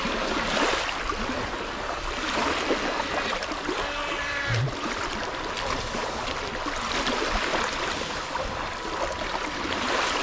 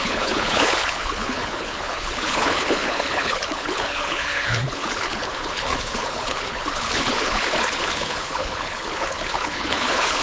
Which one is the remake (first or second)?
second